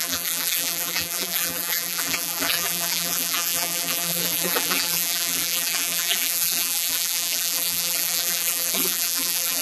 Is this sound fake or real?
fake